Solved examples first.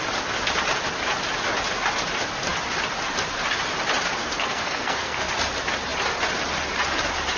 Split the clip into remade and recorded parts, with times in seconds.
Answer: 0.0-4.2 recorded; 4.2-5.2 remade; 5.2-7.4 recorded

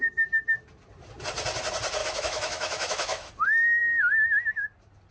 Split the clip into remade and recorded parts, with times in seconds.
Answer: 0.0-2.0 recorded; 2.0-3.3 remade; 3.3-5.1 recorded